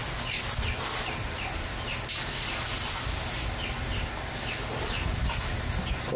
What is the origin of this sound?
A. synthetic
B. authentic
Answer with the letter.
B